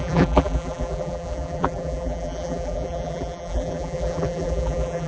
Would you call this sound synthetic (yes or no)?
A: yes